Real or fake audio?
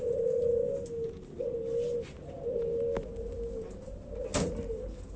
real